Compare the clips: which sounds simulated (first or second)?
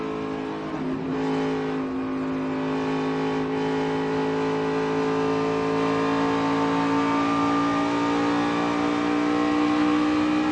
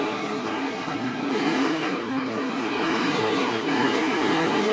second